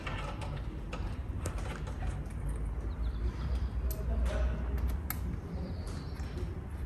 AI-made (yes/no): no